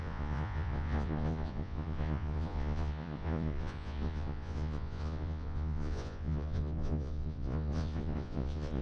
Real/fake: fake